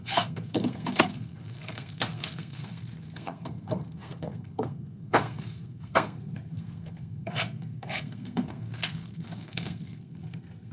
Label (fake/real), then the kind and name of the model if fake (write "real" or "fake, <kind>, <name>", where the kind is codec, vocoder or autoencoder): fake, codec, SNAC